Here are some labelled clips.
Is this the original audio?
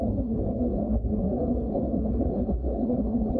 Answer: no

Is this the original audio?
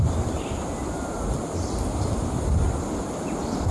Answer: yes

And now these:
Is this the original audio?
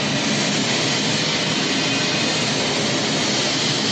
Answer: yes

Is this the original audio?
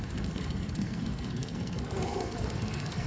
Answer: no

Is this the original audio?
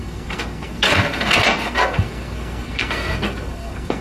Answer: no